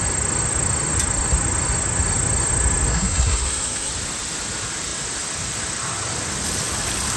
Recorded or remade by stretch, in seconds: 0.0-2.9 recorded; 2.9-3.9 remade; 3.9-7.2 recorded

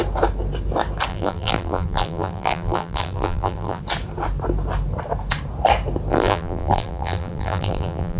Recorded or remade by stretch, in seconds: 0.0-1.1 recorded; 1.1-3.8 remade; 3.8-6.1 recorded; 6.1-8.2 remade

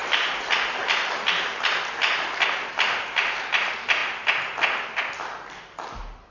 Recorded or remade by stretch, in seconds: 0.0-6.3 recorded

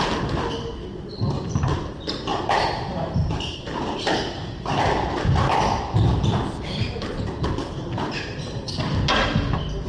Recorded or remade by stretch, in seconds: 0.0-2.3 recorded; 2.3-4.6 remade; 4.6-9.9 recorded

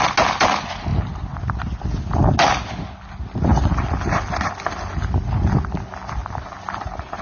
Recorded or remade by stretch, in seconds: 0.0-7.2 recorded

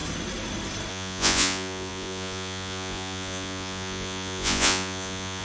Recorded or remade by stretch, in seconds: 0.0-0.9 recorded; 0.9-5.4 remade